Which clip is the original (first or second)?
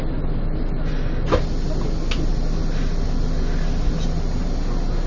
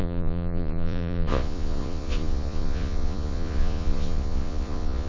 first